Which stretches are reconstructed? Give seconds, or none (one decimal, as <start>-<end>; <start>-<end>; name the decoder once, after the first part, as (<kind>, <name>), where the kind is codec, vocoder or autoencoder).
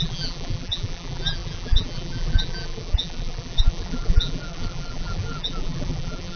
0.0-6.4 (vocoder, BigVGAN v2)